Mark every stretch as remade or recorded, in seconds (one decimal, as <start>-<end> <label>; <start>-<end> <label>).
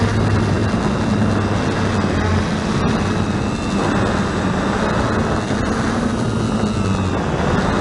0.0-7.8 recorded